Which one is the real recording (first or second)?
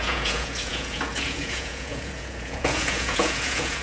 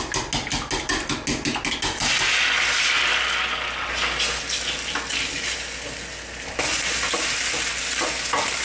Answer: second